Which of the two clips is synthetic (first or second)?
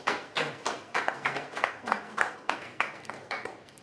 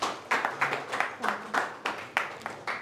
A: first